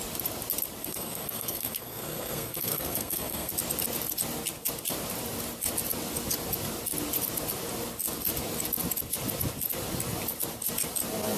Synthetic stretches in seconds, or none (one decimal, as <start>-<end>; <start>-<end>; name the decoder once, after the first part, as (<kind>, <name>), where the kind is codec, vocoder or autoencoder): 0.8-3.5 (codec, SNAC)